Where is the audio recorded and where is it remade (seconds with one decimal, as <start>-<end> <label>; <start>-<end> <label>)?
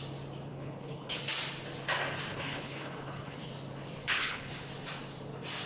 0.0-0.5 recorded; 0.5-1.2 remade; 1.2-2.3 recorded; 2.3-3.5 remade; 3.5-4.0 recorded; 4.0-4.7 remade; 4.7-5.7 recorded